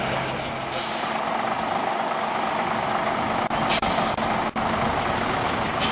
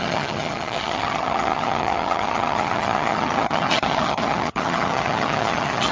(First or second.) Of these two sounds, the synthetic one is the second